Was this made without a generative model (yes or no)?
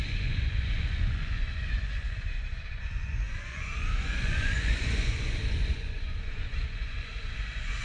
no